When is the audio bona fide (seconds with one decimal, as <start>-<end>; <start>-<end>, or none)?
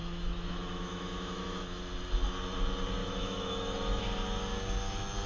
1.8-3.0; 4.0-5.3